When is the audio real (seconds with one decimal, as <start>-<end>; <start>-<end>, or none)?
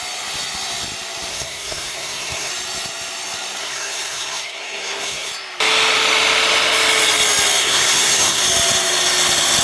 0.0-1.3; 2.5-3.6; 5.3-7.6; 8.4-9.6